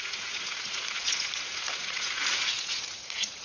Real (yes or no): no